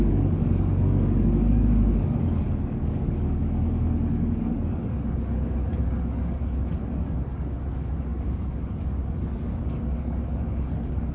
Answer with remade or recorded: remade